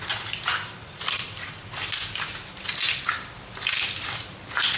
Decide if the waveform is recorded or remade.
recorded